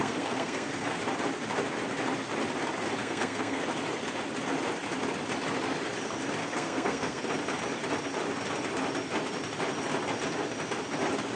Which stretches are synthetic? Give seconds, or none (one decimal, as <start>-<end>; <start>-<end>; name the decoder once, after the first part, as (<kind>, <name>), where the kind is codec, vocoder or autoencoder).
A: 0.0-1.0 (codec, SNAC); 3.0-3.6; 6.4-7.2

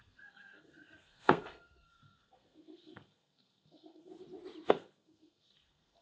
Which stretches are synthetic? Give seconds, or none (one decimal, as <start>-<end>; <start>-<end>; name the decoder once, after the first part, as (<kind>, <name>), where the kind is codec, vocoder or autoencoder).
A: 0.0-4.1 (codec, SNAC); 4.7-6.0

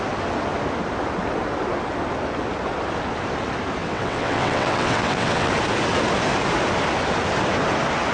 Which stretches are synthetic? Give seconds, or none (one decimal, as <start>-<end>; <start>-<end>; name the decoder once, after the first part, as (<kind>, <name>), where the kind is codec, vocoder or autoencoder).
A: 3.8-5.5 (vocoder, WaveNeXt)

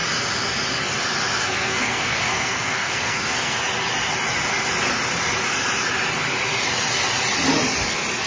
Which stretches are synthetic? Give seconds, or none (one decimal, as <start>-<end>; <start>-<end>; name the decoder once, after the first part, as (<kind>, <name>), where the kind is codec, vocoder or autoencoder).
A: 1.4-3.6 (codec, SNAC)

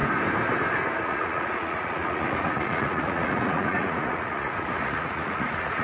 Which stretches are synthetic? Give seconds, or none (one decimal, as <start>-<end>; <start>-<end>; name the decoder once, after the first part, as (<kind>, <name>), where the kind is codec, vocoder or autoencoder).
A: 1.0-5.8 (vocoder, Vocos)